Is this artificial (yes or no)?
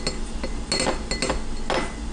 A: no